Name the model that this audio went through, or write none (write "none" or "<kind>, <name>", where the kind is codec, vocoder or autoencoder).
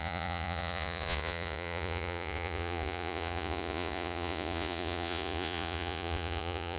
vocoder, Vocos